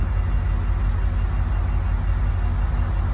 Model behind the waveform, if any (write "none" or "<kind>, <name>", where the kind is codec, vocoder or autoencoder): none